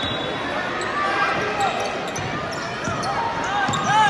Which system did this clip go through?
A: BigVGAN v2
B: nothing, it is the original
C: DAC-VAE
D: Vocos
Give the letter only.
B